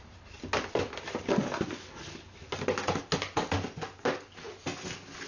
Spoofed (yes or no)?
no